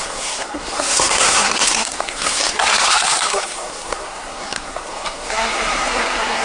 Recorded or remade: remade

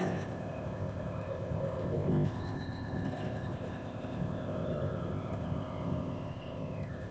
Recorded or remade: remade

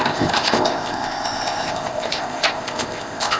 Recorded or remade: remade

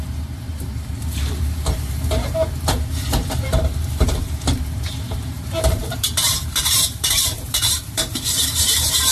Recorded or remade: remade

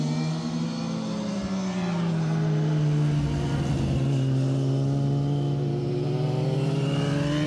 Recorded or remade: recorded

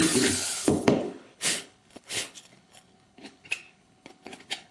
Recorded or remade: remade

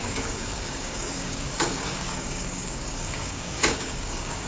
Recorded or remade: remade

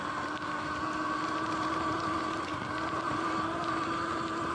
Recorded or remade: recorded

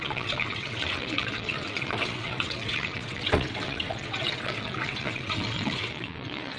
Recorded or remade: remade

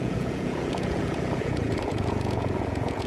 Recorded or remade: remade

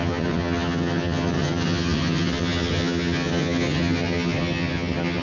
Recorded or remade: remade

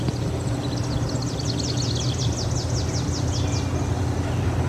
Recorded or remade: recorded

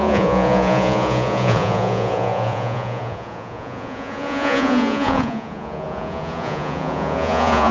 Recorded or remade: remade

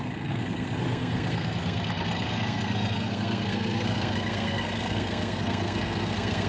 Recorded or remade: remade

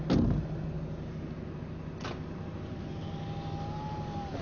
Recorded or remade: recorded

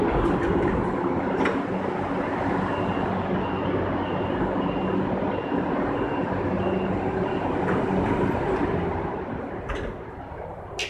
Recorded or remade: recorded